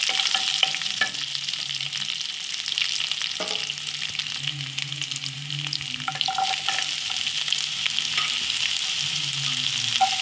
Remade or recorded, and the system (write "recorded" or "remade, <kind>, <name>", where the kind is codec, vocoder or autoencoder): recorded